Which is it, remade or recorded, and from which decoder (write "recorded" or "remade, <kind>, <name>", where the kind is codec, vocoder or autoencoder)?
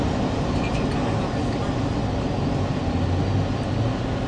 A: recorded